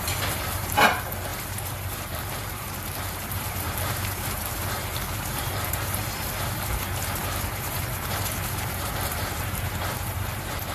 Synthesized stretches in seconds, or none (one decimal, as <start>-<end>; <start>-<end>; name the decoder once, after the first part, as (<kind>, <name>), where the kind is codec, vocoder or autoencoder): 0.0-10.7 (vocoder, BigVGAN v2)